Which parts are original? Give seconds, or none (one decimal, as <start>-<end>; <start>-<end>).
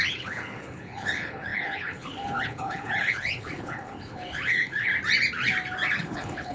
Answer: 4.9-6.0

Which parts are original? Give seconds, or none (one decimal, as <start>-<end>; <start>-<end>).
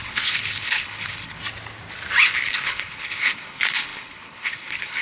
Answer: 1.4-2.2